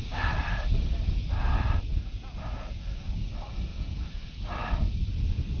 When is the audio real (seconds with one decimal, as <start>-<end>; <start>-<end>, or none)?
0.0-1.9; 2.8-3.7; 4.4-5.6